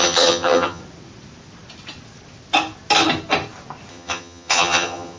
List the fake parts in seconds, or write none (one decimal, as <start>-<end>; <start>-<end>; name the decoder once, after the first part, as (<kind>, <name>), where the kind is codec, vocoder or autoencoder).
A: 0.0-0.8 (vocoder, HiFi-GAN); 3.9-5.2